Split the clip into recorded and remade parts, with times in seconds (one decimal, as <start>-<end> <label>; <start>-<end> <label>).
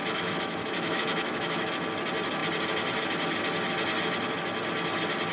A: 0.0-1.7 remade; 1.7-5.3 recorded